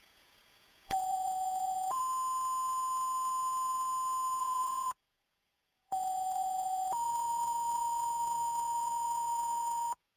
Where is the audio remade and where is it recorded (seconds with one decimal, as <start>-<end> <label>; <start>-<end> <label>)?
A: 0.0-2.0 remade; 2.0-4.4 recorded; 4.4-10.2 remade